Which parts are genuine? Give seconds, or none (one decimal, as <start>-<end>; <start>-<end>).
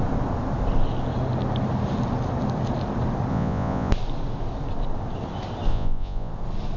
0.0-3.3; 3.9-5.7; 6.3-6.8